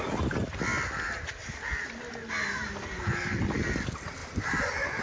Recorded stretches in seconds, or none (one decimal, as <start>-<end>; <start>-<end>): 0.0-2.6; 3.2-4.2